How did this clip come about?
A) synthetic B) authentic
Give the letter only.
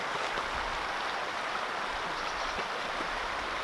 B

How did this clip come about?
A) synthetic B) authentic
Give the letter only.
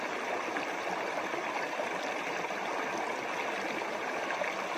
B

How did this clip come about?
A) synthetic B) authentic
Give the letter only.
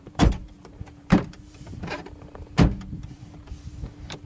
A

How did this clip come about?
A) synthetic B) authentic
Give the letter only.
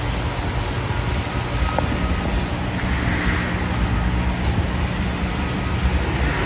B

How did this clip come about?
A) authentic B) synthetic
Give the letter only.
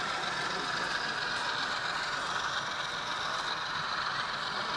A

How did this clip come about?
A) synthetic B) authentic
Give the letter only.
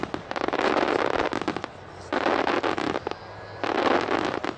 B